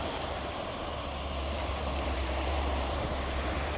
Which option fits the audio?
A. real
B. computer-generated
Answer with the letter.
B